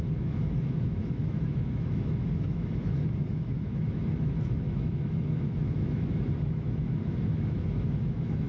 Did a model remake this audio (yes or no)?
yes